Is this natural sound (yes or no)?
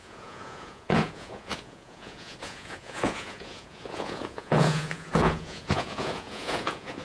no